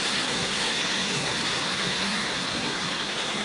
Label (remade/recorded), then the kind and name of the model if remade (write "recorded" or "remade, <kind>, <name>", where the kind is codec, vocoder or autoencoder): remade, codec, SNAC